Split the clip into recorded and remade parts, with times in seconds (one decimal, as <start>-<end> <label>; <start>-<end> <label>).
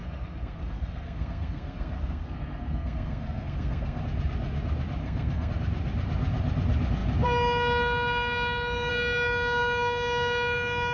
0.0-4.0 remade; 4.0-5.0 recorded; 5.0-5.5 remade; 5.5-10.9 recorded